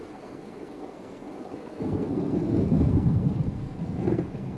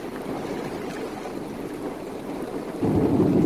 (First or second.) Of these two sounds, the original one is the second